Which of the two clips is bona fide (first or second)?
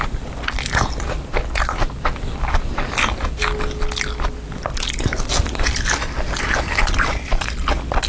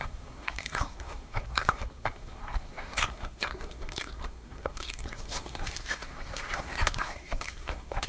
first